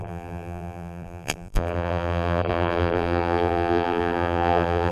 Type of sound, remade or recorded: remade